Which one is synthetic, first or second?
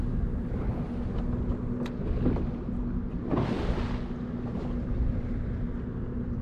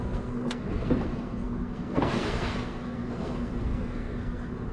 second